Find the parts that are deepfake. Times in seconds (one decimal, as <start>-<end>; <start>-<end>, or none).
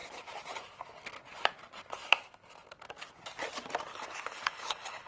3.9-5.1